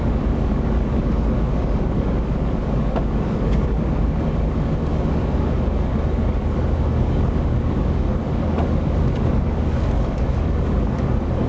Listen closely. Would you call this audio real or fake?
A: fake